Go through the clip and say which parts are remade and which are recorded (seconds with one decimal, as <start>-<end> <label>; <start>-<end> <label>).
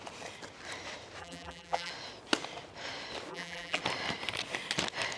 0.0-1.2 recorded; 1.2-1.9 remade; 1.9-3.3 recorded; 3.3-3.8 remade; 3.8-5.2 recorded